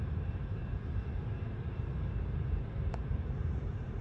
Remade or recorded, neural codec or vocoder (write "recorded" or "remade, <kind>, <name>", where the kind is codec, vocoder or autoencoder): remade, vocoder, BigVGAN v2